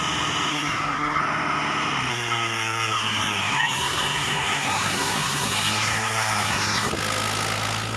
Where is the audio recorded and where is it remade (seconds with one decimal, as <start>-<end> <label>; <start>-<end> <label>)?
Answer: 0.0-0.5 recorded; 0.5-1.2 remade; 1.2-2.1 recorded; 2.1-6.9 remade; 6.9-8.0 recorded